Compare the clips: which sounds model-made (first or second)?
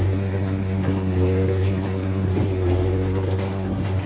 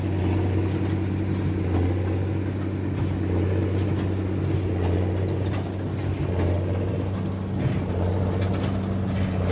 first